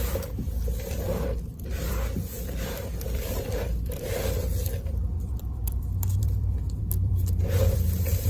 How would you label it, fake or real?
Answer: fake